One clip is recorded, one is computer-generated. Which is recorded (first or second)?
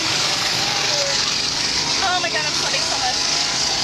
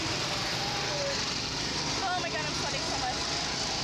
second